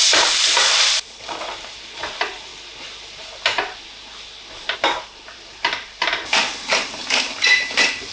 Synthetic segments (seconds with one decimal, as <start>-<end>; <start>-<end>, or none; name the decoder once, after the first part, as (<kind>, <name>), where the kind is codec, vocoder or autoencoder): 0.0-2.5 (vocoder, BigVGAN v2); 5.0-8.1